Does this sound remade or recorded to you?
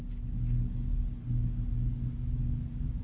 recorded